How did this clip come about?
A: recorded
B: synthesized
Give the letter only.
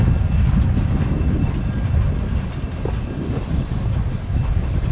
A